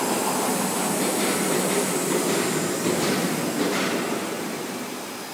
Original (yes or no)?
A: yes